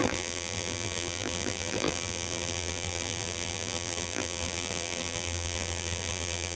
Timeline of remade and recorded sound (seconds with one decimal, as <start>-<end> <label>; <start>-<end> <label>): 0.0-6.6 remade